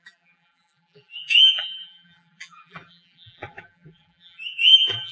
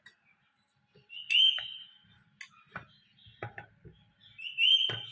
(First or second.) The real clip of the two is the second